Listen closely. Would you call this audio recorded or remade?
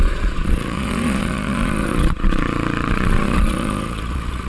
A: remade